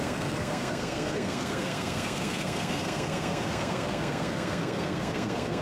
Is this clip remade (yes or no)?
yes